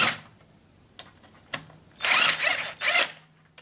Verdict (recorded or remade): recorded